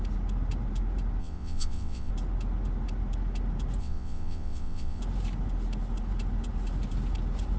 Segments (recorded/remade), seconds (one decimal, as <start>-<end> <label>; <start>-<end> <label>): 0.0-1.2 recorded; 1.2-2.1 remade; 2.1-3.8 recorded; 3.8-5.0 remade; 5.0-7.6 recorded